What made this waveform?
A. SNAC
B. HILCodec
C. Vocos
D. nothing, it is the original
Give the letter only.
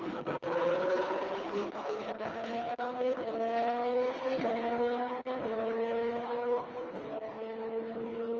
B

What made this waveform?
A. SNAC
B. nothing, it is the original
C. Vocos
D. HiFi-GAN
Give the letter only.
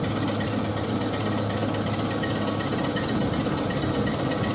B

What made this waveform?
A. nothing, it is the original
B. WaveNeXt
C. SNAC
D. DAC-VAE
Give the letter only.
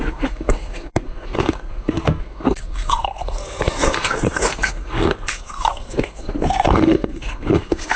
C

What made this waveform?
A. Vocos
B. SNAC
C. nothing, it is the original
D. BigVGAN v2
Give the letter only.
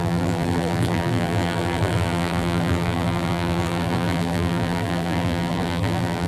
D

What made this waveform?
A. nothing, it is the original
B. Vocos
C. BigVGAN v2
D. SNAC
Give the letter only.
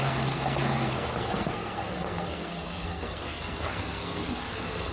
D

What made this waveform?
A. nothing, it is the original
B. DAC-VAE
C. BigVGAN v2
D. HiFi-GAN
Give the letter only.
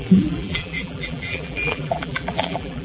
C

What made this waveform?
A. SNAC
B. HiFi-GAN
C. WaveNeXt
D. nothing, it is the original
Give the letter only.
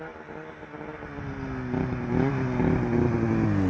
D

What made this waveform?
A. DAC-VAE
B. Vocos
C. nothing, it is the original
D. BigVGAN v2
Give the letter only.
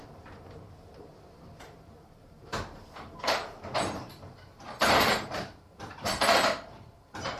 D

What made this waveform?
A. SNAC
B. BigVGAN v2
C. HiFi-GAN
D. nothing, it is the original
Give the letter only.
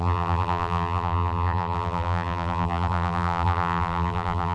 B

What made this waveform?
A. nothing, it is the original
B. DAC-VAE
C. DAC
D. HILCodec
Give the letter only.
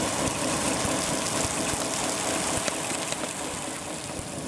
A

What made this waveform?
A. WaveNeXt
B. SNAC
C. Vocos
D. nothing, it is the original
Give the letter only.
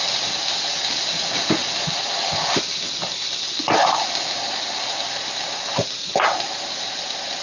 D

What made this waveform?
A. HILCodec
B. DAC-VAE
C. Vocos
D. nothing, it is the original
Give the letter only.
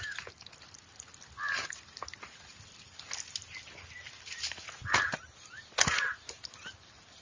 D